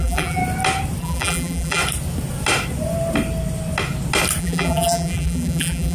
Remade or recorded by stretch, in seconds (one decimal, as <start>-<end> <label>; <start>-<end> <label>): 0.0-0.4 remade; 0.4-1.0 recorded; 1.0-1.8 remade; 1.8-4.4 recorded; 4.4-5.9 remade